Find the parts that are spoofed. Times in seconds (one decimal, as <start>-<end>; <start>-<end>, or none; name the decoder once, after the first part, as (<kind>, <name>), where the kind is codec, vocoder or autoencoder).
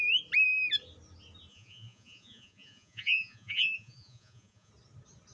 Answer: 1.5-4.7 (vocoder, Vocos)